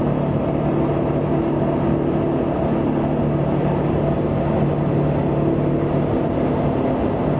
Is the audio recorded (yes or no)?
yes